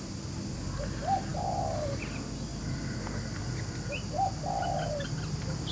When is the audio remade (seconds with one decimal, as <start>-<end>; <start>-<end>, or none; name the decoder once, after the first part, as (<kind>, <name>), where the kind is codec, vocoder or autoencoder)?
none